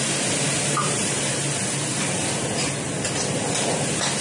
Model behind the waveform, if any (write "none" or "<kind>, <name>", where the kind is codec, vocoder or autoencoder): none